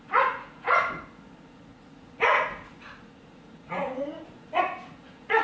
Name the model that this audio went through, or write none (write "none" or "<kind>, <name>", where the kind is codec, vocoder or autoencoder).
vocoder, Vocos